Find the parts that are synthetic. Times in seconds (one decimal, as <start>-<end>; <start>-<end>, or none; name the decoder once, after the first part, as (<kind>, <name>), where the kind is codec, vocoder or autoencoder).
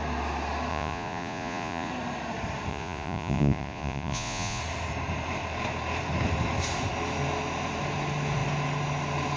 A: 0.7-1.9 (vocoder, Vocos); 2.7-4.6